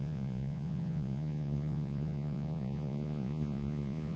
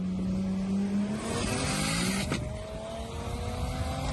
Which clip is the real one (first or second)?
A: second